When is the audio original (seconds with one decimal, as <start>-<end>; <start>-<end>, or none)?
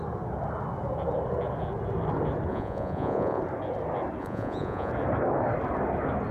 0.0-2.5; 3.4-4.2; 4.9-6.3